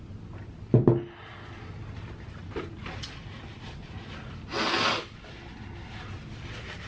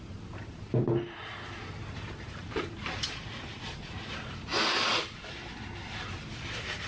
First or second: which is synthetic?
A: second